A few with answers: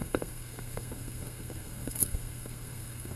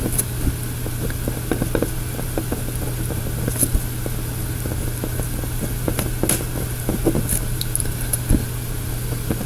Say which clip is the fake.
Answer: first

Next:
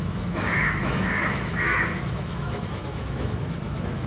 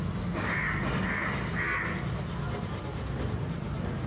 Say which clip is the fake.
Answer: first